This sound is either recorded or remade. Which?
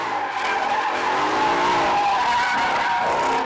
recorded